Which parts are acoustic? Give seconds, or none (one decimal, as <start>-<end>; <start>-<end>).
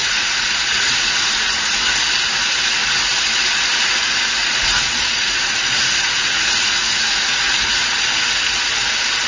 1.8-4.4; 7.9-9.3